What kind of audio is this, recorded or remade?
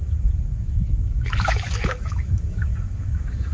remade